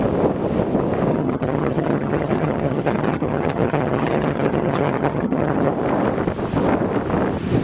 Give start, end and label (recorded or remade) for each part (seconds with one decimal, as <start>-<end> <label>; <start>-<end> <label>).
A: 0.0-1.1 recorded; 1.1-5.7 remade; 5.7-7.6 recorded